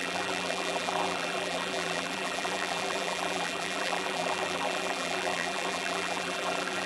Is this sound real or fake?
fake